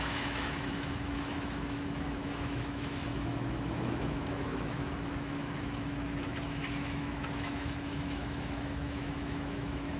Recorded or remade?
remade